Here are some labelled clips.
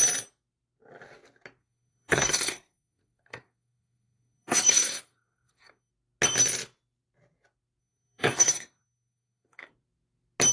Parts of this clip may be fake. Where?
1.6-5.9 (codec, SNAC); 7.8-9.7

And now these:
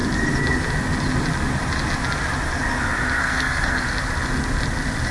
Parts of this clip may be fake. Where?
3.2-3.8 (codec, SNAC)

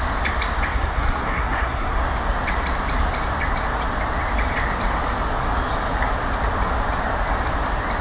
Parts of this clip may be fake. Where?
0.7-2.0 (codec, SNAC)

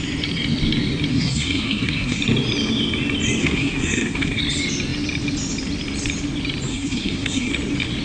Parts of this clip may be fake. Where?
1.1-2.2 (codec, SNAC); 3.4-4.4; 6.7-7.5

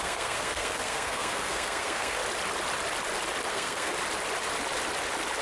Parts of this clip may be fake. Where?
0.0-2.2 (codec, SNAC); 3.5-3.9

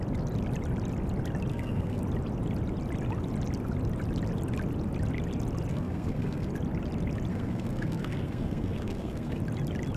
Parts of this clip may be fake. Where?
1.5-2.0 (codec, SNAC); 5.7-6.5; 7.3-9.4

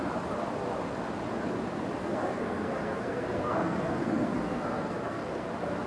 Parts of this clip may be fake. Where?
2.0-5.5 (codec, SNAC)